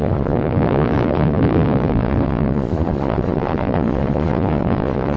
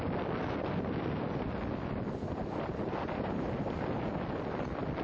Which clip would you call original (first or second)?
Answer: second